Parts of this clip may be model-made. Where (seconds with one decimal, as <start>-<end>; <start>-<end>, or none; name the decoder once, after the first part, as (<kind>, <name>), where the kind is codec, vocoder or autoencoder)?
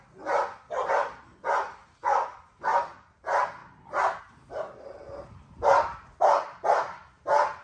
none